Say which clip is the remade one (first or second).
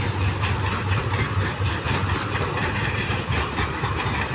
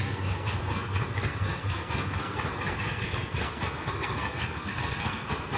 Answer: second